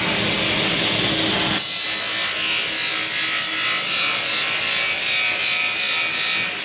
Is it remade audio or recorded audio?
recorded